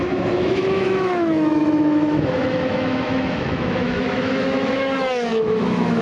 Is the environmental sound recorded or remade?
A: remade